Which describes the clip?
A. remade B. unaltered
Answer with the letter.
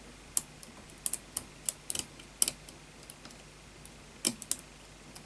B